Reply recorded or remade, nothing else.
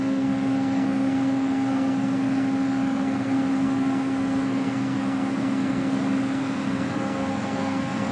remade